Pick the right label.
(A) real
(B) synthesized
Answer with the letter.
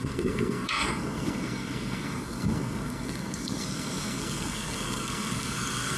B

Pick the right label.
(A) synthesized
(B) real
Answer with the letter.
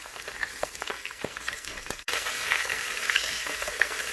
A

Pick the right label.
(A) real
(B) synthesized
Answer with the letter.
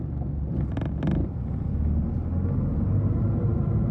A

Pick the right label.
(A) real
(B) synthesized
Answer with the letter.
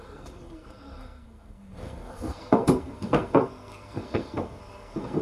B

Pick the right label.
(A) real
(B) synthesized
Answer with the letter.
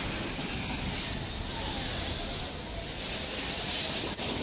A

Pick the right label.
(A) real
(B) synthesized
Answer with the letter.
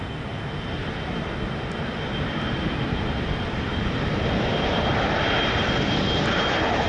A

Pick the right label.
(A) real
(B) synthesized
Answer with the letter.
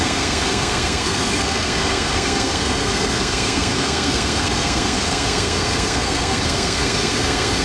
B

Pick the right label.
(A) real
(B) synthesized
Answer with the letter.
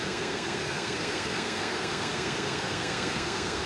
B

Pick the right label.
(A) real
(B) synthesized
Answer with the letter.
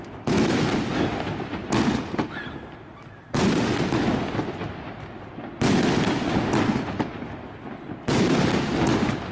A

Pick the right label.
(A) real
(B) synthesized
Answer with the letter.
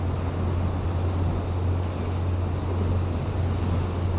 A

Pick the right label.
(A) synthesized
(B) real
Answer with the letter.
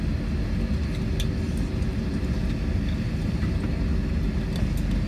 B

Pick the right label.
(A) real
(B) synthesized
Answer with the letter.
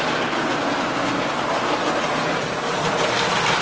A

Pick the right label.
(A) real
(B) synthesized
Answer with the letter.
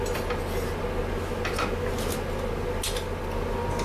A